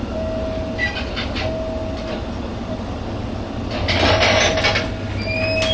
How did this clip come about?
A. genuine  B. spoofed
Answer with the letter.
A